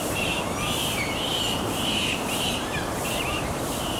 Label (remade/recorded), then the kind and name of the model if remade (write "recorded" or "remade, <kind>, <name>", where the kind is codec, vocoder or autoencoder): remade, vocoder, BigVGAN v2